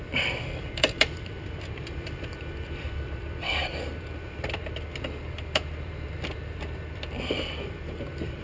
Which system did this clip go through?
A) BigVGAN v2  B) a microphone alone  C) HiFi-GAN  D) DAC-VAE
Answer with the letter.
A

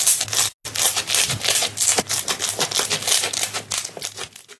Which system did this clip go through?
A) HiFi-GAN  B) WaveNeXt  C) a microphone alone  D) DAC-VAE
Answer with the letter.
C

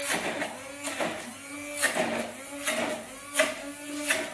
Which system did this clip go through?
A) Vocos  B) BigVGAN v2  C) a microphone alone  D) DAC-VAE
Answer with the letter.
C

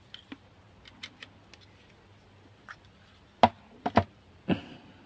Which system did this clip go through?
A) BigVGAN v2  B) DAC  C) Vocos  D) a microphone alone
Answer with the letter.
D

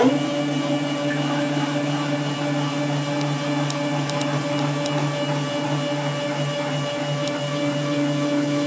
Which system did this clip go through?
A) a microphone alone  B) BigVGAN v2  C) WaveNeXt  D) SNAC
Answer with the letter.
A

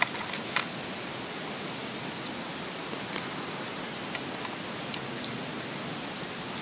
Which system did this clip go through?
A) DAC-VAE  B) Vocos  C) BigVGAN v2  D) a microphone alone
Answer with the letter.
D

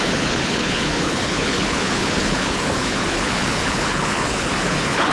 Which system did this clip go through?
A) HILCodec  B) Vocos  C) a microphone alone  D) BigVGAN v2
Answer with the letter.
A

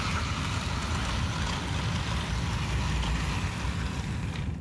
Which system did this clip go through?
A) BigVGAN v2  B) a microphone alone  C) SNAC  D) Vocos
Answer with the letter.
B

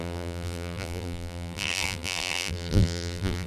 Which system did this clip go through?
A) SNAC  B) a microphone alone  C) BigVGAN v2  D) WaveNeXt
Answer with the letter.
C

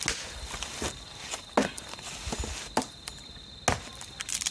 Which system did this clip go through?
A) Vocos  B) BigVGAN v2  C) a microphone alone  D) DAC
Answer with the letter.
C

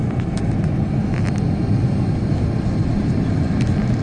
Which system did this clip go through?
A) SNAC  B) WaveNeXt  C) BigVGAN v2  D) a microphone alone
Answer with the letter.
D